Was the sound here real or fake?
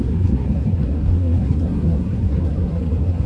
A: fake